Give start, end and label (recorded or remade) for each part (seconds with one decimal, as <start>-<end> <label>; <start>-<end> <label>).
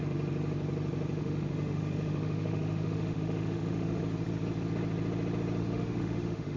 0.0-1.2 recorded; 1.2-4.0 remade; 4.0-5.6 recorded; 5.6-6.6 remade